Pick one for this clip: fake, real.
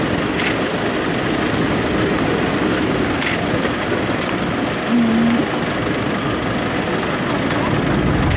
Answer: real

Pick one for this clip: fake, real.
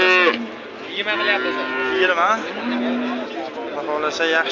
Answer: real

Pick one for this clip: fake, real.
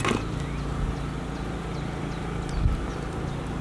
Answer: real